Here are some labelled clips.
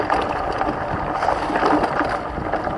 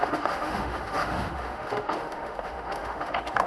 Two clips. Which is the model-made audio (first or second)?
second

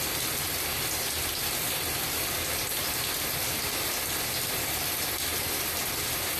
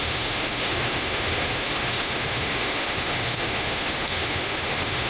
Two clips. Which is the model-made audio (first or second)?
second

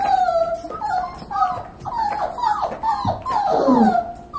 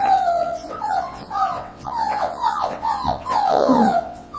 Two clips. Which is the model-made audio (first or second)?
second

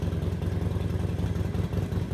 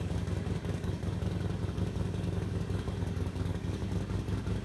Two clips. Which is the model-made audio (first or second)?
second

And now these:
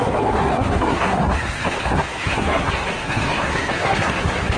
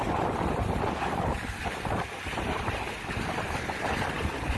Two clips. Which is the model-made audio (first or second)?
first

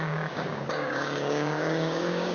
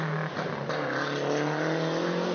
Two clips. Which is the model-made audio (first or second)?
first